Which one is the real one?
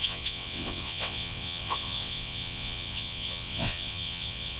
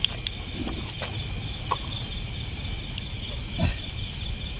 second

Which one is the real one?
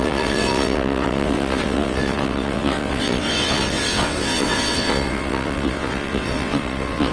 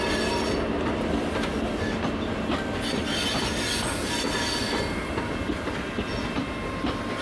second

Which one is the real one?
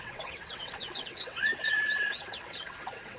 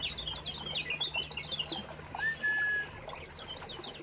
second